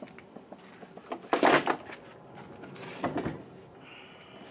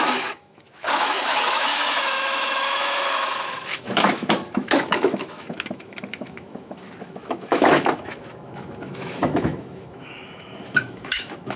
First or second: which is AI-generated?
second